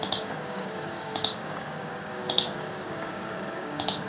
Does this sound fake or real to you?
fake